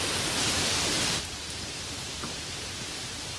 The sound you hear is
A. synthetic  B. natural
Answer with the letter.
A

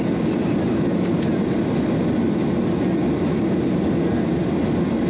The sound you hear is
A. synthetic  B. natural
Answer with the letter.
B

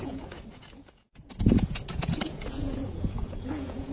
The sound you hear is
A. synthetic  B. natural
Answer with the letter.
A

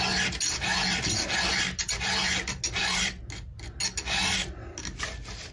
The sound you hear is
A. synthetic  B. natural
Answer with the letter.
B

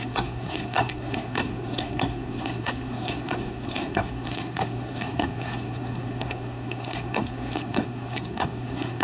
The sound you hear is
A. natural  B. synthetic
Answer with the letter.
B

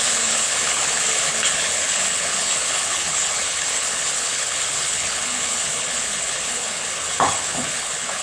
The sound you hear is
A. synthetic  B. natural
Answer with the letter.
A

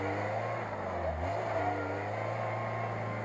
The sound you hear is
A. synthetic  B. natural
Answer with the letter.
B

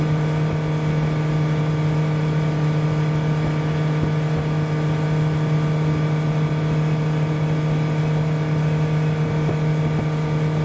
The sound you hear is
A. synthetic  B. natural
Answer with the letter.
B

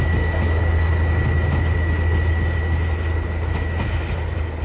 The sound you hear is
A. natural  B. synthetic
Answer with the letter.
A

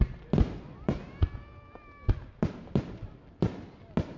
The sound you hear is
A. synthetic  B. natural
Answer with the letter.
B